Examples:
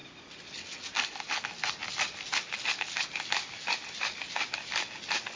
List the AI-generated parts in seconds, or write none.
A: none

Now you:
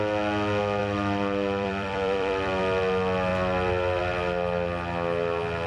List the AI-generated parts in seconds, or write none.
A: 0.8-2.6 (vocoder, BigVGAN v2); 3.3-4.0

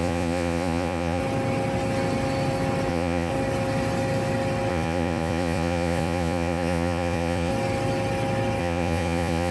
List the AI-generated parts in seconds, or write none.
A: 0.0-1.2 (vocoder, Vocos); 2.9-3.3; 4.7-7.5; 8.6-9.5

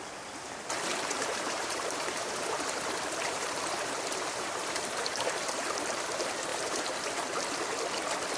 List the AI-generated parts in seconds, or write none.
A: 0.9-5.9 (vocoder, BigVGAN v2); 6.5-7.1

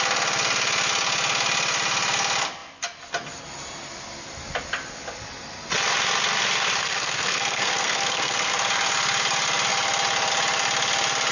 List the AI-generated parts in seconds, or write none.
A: 6.8-8.5 (codec, SNAC)